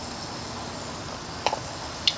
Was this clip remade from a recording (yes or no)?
no